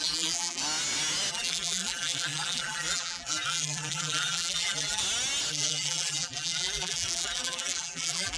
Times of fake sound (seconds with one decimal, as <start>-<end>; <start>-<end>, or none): 0.0-0.6; 1.3-5.0; 5.5-8.4